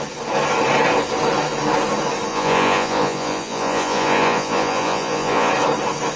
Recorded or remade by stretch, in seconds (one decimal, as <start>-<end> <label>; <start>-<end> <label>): 0.0-2.3 recorded; 2.3-5.5 remade; 5.5-6.2 recorded